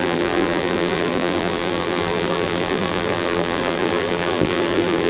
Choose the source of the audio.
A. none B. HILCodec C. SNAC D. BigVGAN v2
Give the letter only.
D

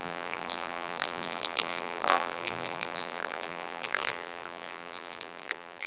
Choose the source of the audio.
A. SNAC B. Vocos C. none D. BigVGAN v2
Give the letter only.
D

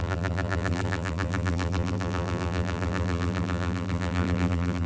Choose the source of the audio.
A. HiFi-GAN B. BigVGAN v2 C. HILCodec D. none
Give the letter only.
B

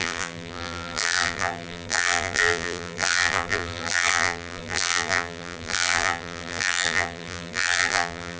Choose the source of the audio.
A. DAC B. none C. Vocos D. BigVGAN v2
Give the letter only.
D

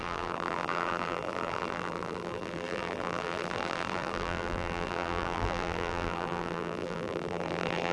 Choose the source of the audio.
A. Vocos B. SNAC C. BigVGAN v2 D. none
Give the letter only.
C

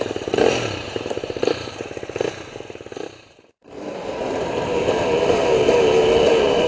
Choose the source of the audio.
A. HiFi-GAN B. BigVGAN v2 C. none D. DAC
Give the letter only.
B